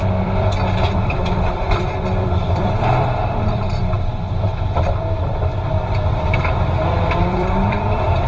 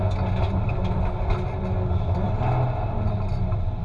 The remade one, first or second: first